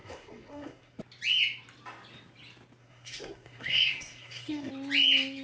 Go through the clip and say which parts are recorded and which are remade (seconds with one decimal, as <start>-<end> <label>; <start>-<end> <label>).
0.0-1.0 remade; 1.0-2.8 recorded; 2.8-4.7 remade; 4.7-5.4 recorded